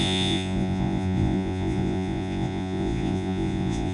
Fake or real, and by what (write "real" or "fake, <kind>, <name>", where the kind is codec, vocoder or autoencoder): fake, vocoder, Vocos